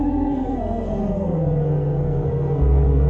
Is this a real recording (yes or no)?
no